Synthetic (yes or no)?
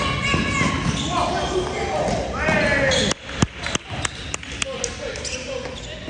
no